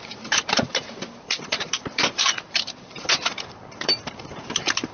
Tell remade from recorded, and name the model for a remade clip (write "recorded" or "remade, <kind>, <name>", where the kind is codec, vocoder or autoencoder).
remade, vocoder, BigVGAN v2